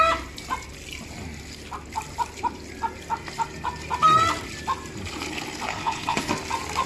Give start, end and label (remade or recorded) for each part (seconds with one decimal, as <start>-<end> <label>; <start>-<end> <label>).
0.0-5.7 recorded; 5.7-6.3 remade; 6.3-6.9 recorded